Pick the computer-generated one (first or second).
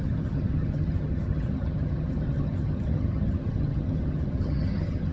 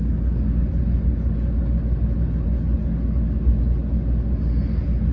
first